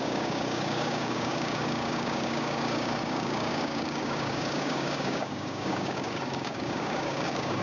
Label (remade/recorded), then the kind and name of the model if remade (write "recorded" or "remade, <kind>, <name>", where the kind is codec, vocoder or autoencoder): remade, codec, DAC